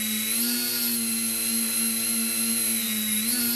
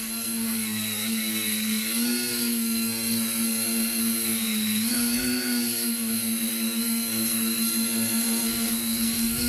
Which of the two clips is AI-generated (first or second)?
second